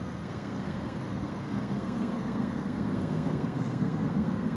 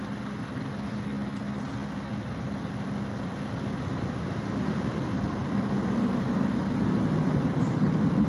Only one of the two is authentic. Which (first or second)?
second